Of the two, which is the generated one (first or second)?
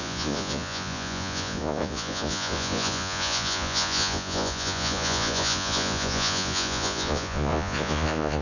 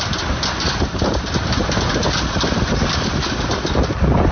first